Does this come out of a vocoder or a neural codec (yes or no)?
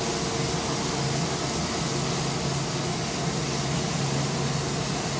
no